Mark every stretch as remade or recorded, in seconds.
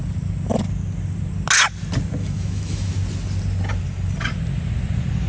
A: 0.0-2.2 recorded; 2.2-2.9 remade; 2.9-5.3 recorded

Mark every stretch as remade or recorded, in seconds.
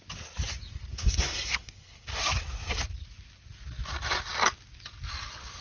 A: 0.0-0.9 recorded; 0.9-2.2 remade; 2.2-5.6 recorded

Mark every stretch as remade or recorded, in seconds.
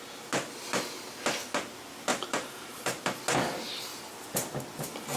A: 0.0-2.1 recorded; 2.1-3.2 remade; 3.2-3.9 recorded; 3.9-4.5 remade; 4.5-5.2 recorded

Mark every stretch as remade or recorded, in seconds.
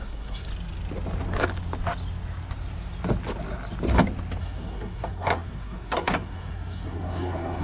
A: 0.0-0.5 remade; 0.5-4.4 recorded; 4.4-7.6 remade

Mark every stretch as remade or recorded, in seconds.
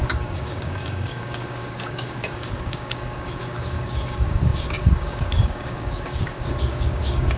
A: 0.0-7.4 remade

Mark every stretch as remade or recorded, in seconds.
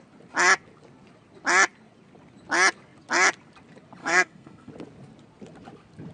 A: 0.0-4.0 recorded; 4.0-4.7 remade; 4.7-6.1 recorded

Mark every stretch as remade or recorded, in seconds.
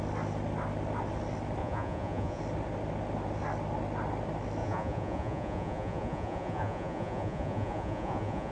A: 0.0-1.6 recorded; 1.6-2.4 remade; 2.4-4.6 recorded; 4.6-8.5 remade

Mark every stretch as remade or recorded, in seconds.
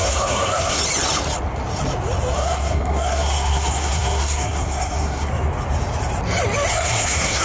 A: 0.0-0.8 remade; 0.8-2.3 recorded; 2.3-5.3 remade; 5.3-6.7 recorded; 6.7-7.4 remade